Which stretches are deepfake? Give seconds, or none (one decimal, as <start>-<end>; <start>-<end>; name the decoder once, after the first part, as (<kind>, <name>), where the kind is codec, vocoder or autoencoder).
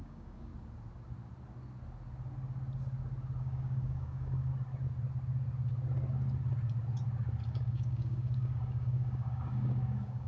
0.0-0.5 (codec, DAC); 3.4-4.5; 7.5-10.3